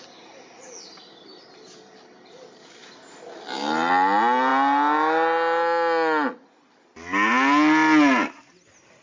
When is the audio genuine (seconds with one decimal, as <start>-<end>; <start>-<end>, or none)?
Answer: 0.0-9.0